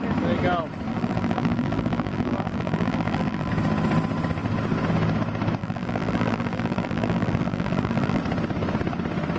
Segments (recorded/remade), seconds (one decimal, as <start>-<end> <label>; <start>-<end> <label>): 0.0-0.9 recorded; 0.9-3.5 remade; 3.5-5.6 recorded; 5.6-8.2 remade; 8.2-9.4 recorded